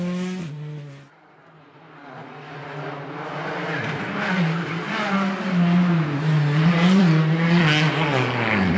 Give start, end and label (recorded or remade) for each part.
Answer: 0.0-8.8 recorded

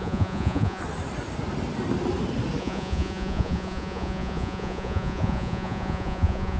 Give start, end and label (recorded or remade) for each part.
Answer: 0.0-0.8 remade; 0.8-2.6 recorded; 2.6-6.6 remade

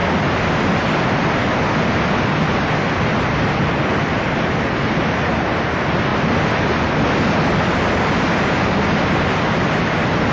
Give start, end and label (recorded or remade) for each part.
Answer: 0.0-10.3 recorded